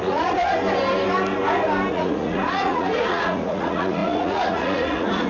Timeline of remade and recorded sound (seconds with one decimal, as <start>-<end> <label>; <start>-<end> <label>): 0.0-0.5 remade; 0.5-1.9 recorded; 1.9-5.3 remade